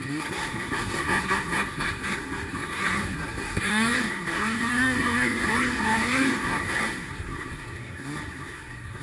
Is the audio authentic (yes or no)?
no